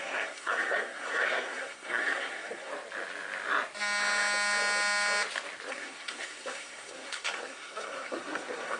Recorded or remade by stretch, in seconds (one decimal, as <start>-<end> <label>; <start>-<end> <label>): 0.0-2.7 remade; 2.7-5.7 recorded; 5.7-8.8 remade